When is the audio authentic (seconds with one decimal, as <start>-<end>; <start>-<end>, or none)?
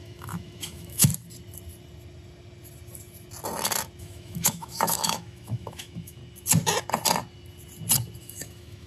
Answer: 1.1-4.0; 6.2-8.2